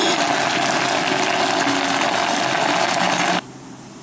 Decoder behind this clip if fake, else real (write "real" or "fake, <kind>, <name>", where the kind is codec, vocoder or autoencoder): real